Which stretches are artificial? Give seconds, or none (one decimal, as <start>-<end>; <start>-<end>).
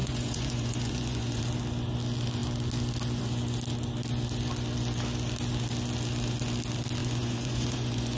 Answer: 0.0-1.4; 7.0-8.2